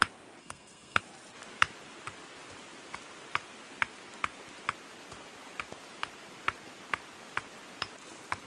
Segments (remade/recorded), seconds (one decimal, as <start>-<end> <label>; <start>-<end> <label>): 0.0-0.4 recorded; 0.4-1.0 remade; 1.0-8.5 recorded